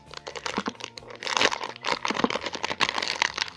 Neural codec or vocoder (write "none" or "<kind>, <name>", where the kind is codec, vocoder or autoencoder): vocoder, BigVGAN v2